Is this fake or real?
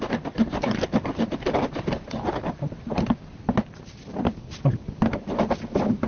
real